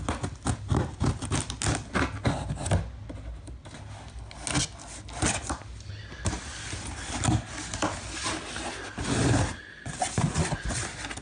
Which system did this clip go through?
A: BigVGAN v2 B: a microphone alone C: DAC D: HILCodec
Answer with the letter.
B